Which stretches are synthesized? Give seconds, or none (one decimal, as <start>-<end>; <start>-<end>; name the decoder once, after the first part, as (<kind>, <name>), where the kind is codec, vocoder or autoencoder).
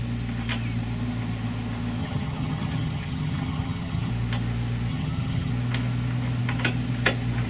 2.0-4.1 (vocoder, HiFi-GAN); 4.9-5.5